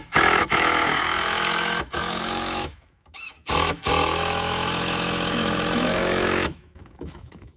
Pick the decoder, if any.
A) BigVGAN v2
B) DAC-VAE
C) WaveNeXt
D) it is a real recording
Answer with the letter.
B